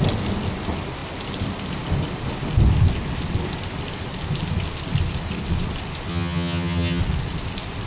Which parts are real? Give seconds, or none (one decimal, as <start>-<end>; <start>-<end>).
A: 0.0-6.1; 7.0-7.9